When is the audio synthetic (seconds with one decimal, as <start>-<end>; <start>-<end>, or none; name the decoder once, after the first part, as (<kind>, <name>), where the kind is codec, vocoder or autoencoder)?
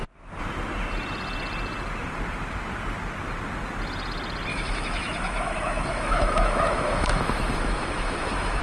4.5-8.6 (autoencoder, DAC-VAE)